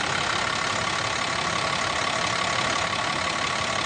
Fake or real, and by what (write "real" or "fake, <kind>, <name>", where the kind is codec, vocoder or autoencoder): fake, vocoder, BigVGAN v2